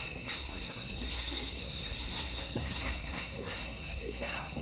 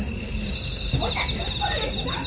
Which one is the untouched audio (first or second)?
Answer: second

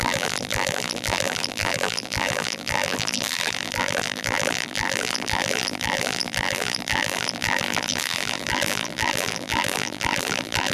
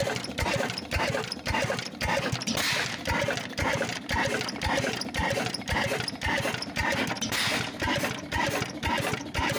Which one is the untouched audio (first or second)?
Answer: second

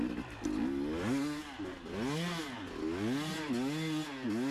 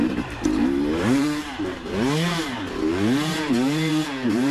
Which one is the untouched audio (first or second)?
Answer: first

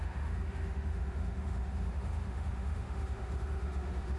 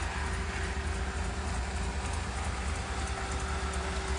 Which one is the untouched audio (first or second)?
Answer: second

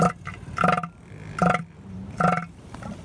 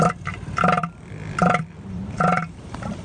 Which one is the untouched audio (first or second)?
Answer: first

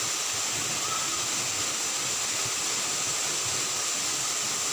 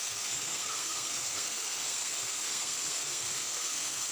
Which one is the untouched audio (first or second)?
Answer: first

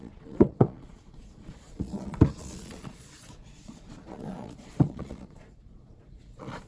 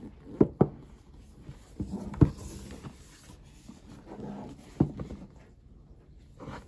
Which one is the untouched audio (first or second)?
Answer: second